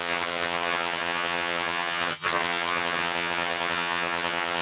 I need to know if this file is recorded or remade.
remade